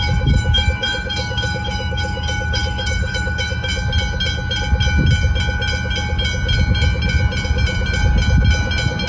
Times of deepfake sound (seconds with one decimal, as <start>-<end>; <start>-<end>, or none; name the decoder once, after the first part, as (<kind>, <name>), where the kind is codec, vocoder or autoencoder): 0.0-3.7 (autoencoder, DAC-VAE)